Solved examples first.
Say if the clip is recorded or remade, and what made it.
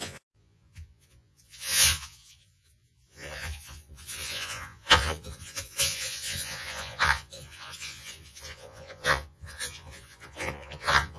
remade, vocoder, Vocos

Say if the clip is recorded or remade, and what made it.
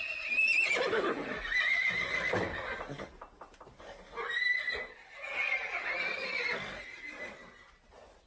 recorded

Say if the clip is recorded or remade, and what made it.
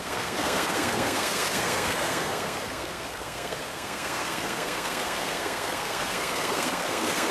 remade, codec, SNAC